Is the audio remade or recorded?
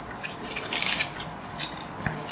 recorded